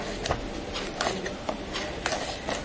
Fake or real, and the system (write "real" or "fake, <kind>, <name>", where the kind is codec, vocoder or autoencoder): real